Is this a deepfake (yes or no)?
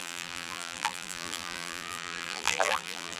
yes